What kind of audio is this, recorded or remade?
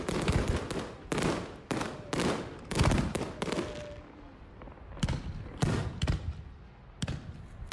recorded